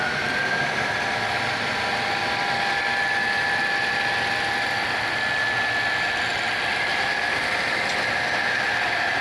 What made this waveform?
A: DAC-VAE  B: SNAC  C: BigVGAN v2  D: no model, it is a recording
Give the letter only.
D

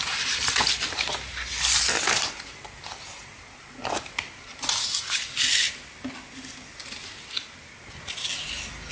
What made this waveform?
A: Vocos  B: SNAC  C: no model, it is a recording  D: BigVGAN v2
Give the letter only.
C